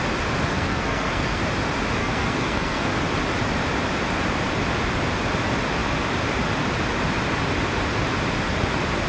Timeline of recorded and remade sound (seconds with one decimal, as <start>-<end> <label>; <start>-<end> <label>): 0.0-0.5 recorded; 0.5-1.4 remade; 1.4-2.0 recorded; 2.0-2.9 remade; 2.9-9.1 recorded